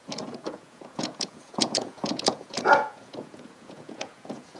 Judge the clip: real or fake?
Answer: fake